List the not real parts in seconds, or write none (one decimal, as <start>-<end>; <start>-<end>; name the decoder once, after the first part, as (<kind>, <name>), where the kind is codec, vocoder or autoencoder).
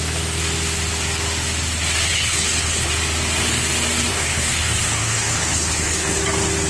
2.1-2.9 (codec, HILCodec); 4.1-6.2